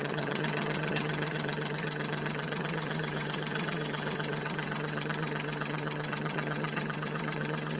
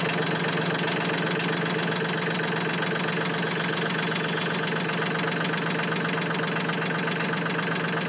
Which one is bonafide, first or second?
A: second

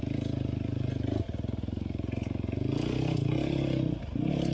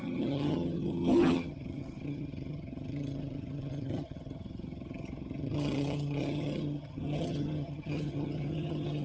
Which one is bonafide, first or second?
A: first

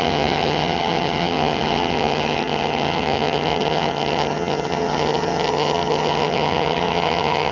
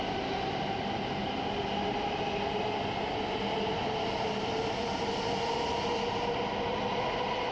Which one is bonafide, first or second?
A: second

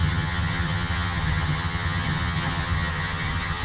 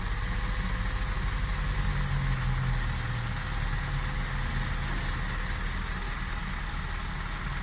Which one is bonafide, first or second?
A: second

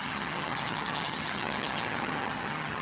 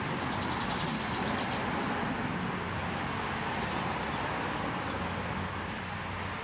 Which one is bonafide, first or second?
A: second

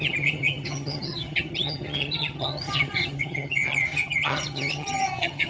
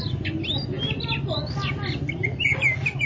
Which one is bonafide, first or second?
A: second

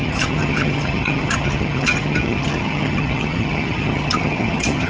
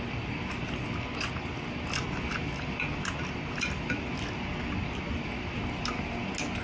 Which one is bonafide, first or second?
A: second